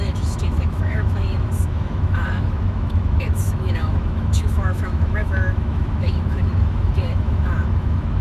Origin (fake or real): fake